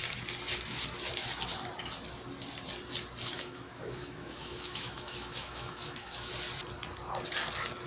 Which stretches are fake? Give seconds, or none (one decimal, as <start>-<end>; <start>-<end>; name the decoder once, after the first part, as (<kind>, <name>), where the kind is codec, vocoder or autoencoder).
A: 3.3-6.3 (autoencoder, DAC-VAE)